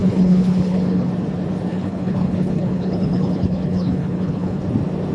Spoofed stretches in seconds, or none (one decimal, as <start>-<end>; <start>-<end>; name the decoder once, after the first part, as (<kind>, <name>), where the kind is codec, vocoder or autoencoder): 0.0-1.1 (codec, HILCodec); 1.7-4.6